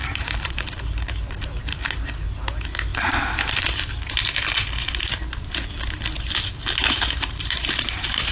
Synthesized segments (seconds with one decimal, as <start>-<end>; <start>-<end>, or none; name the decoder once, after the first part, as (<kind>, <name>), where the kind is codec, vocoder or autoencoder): 0.0-1.7 (vocoder, BigVGAN v2); 6.8-8.3